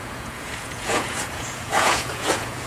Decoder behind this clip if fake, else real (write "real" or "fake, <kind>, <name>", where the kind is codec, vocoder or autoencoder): fake, vocoder, Vocos